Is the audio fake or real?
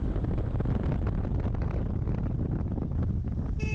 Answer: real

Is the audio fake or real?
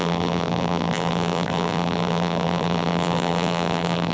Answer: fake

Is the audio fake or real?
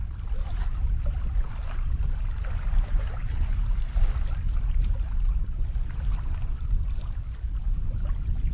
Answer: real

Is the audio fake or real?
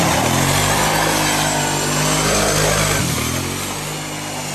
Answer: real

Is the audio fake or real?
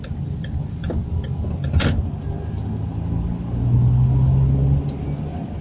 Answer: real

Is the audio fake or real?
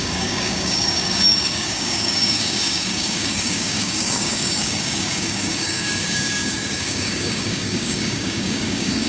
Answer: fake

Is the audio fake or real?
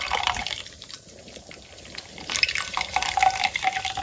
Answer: fake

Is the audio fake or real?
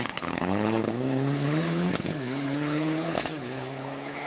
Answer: fake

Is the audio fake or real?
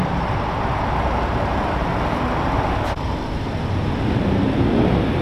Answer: real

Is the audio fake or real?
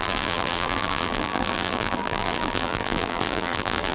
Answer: fake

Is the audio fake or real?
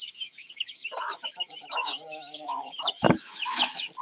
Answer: fake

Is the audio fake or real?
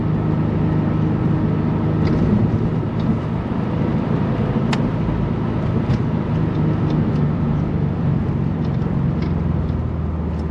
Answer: real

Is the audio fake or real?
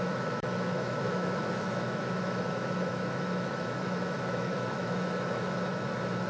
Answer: fake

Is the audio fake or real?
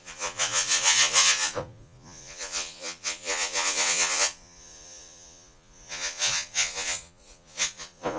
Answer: fake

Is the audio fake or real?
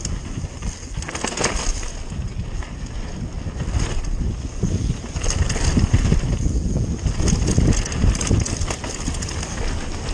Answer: real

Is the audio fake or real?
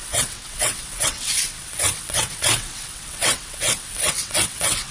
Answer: fake